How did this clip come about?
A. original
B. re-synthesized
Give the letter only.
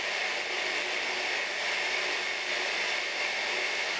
A